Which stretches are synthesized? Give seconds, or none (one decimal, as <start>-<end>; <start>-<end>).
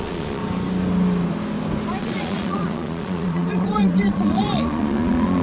0.0-0.4; 2.0-5.4